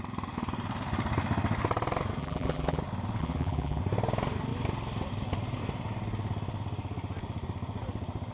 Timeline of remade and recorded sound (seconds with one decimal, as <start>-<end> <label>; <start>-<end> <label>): 0.0-2.2 recorded; 2.2-2.8 remade; 2.8-3.2 recorded; 3.2-3.8 remade; 3.8-8.3 recorded